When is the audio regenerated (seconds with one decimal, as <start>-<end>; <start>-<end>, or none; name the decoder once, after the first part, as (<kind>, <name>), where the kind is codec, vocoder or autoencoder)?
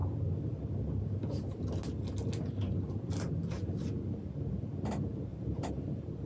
5.3-6.3 (vocoder, BigVGAN v2)